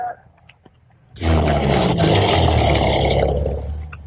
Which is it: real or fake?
real